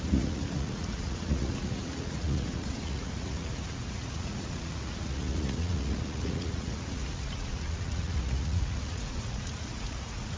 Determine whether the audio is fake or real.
fake